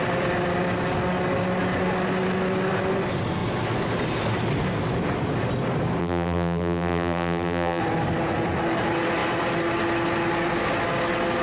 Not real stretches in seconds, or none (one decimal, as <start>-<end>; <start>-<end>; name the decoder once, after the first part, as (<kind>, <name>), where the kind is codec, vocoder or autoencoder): 6.0-7.8 (vocoder, BigVGAN v2)